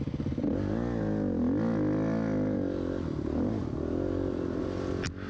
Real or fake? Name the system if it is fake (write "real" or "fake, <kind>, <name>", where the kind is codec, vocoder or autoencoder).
real